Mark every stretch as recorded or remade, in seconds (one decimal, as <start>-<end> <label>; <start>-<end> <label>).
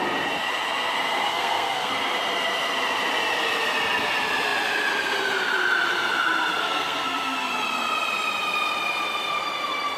0.0-1.3 recorded; 1.3-1.9 remade; 1.9-6.6 recorded; 6.6-7.5 remade; 7.5-10.0 recorded